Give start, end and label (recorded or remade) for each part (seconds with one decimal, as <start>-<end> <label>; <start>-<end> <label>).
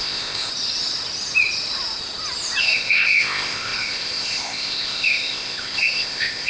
0.0-0.5 remade; 0.5-2.6 recorded; 2.6-6.5 remade